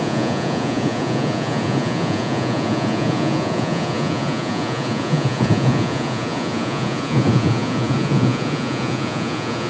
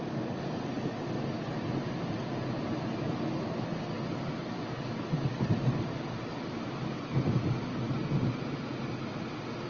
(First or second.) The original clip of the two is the second